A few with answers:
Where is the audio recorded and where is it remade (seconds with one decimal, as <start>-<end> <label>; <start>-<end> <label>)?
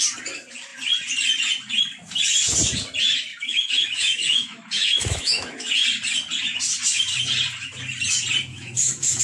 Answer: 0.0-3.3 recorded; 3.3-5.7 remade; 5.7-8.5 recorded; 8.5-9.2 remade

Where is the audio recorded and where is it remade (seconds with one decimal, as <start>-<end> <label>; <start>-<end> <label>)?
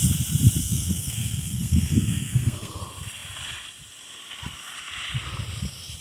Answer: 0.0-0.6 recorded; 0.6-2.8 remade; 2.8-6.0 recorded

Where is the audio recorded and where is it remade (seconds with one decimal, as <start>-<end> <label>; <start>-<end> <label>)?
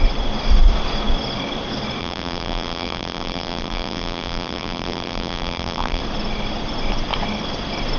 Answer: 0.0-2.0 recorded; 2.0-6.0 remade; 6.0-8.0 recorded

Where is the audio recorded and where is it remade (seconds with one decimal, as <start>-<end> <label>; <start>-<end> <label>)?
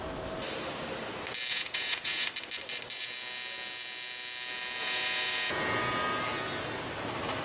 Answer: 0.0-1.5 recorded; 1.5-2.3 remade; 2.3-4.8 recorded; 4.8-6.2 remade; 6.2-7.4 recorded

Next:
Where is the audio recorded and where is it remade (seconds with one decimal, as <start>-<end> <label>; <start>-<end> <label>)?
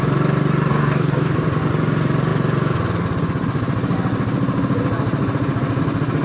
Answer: 0.0-0.7 recorded; 0.7-1.3 remade; 1.3-6.2 recorded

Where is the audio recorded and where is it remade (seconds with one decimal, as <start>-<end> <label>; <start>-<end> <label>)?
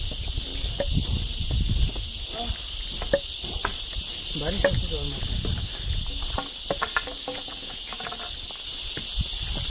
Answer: 0.0-7.5 recorded; 7.5-8.2 remade; 8.2-9.7 recorded